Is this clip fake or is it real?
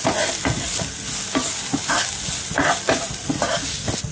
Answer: real